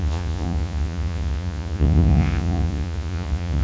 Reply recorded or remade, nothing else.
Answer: remade